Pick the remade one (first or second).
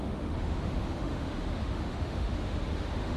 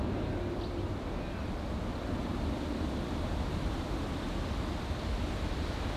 first